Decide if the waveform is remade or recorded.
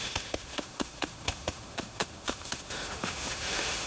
remade